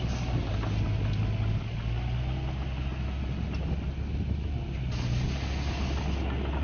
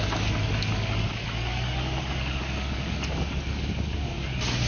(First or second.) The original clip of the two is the first